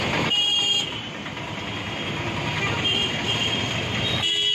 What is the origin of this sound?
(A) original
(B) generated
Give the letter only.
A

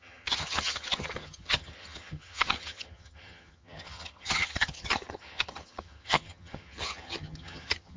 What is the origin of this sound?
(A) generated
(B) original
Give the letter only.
A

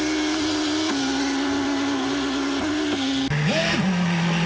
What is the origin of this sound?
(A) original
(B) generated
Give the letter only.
A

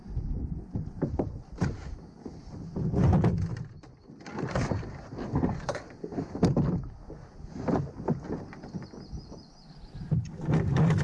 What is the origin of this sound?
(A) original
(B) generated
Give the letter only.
A